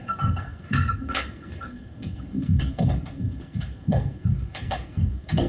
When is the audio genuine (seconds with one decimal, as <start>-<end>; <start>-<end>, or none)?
none